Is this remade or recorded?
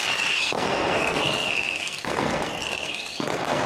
remade